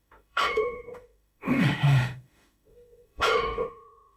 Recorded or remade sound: remade